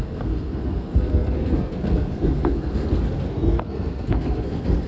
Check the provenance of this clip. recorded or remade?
remade